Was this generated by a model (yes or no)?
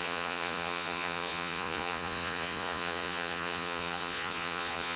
yes